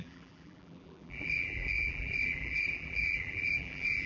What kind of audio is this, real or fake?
fake